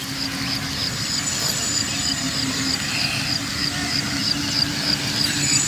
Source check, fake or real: real